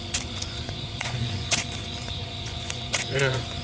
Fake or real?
fake